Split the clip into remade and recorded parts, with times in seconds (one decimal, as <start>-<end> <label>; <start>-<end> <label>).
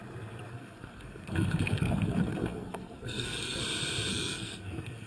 0.0-0.5 recorded; 0.5-3.6 remade; 3.6-4.1 recorded; 4.1-5.1 remade